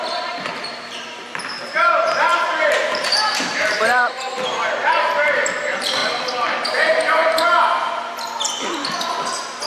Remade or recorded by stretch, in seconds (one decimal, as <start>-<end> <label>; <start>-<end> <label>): 0.0-6.0 remade; 6.0-9.7 recorded